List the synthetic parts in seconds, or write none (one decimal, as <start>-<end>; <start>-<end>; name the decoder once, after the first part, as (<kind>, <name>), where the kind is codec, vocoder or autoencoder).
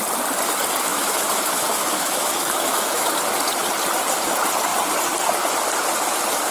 0.9-3.1 (autoencoder, DAC-VAE)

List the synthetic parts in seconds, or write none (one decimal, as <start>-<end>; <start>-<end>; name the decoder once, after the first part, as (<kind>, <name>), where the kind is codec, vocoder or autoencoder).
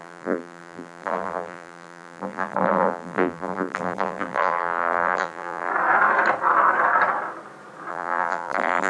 0.0-5.7 (vocoder, BigVGAN v2); 7.9-8.9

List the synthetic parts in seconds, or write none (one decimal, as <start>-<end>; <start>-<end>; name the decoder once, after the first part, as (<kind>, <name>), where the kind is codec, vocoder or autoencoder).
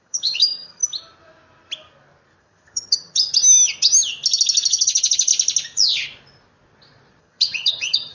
0.0-0.8 (vocoder, HiFi-GAN); 2.4-3.3; 4.7-5.3; 7.2-8.1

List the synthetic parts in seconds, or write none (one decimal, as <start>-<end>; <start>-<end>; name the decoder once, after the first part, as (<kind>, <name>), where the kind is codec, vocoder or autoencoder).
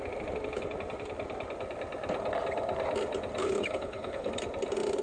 3.4-4.3 (codec, HILCodec)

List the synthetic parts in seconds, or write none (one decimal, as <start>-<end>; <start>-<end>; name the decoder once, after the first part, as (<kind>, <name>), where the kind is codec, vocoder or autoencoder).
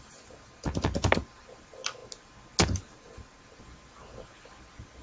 none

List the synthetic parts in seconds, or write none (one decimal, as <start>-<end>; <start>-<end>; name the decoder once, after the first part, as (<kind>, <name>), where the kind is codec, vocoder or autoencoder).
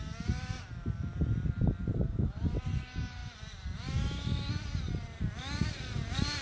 none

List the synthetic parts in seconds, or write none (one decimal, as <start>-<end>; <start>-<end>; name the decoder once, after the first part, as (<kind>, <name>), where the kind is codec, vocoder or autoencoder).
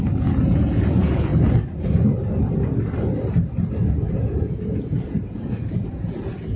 0.0-1.3 (vocoder, Vocos); 4.1-6.6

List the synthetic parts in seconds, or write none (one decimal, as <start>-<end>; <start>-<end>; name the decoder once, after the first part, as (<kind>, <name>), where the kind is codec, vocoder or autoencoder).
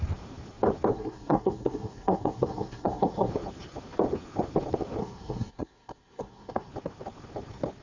0.9-3.3 (codec, SNAC); 5.0-6.7